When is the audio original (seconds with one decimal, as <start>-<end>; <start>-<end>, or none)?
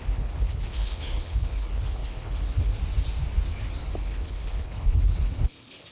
2.7-4.0